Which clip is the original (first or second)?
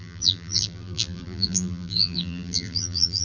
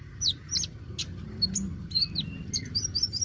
second